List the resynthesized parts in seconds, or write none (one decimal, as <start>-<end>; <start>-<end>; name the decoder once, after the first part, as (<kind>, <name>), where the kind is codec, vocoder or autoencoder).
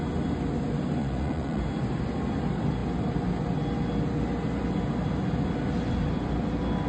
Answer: 1.0-1.6 (vocoder, Vocos)